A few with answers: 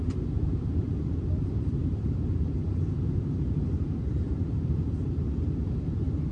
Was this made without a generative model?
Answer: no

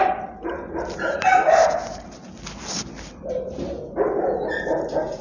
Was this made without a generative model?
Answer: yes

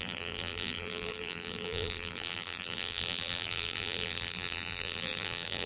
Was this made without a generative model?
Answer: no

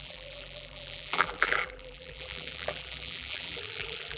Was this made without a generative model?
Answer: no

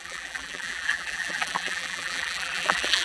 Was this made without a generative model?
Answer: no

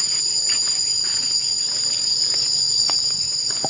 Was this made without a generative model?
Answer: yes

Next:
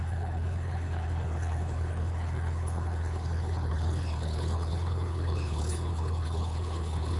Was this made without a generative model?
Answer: no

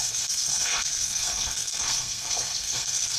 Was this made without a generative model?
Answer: no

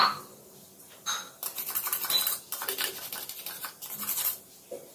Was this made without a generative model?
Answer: yes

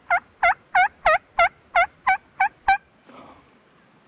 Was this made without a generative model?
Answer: yes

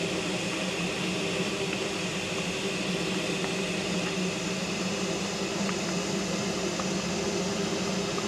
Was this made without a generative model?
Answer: yes